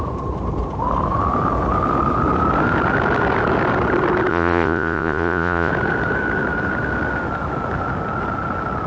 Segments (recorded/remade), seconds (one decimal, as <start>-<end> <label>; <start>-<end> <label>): 0.0-4.3 recorded; 4.3-5.7 remade; 5.7-8.9 recorded